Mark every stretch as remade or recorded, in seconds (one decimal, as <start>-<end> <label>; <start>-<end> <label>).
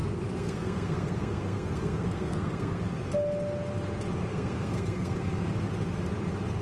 0.0-2.8 remade; 2.8-4.3 recorded; 4.3-5.4 remade; 5.4-6.6 recorded